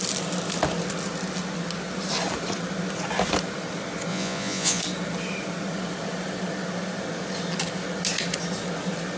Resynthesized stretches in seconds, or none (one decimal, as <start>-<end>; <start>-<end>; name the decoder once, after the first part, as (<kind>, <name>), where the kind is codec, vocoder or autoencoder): 4.1-4.8 (vocoder, Vocos)